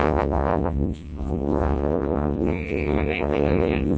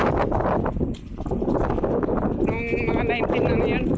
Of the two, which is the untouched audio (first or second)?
second